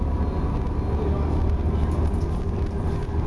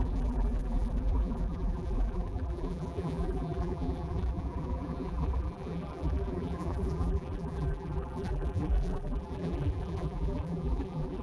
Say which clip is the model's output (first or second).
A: second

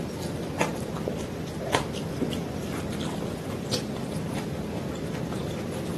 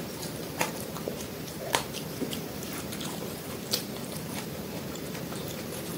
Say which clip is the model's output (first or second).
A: second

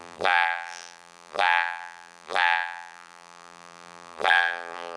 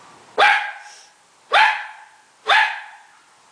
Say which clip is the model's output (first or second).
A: first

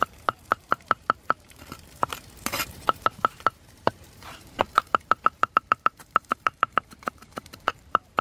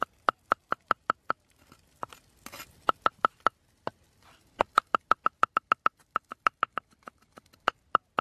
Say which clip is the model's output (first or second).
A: first